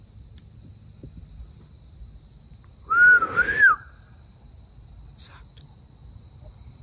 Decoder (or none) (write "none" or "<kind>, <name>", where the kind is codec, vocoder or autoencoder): none